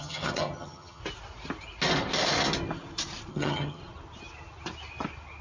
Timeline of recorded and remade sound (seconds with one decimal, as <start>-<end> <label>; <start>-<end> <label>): 0.0-1.0 remade; 1.0-3.3 recorded; 3.3-3.8 remade; 3.8-5.4 recorded